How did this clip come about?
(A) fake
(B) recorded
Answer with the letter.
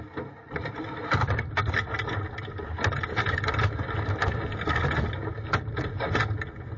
B